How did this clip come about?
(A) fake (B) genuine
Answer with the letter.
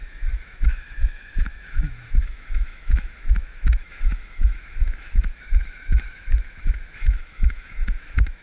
A